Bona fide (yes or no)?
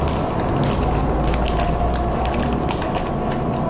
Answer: yes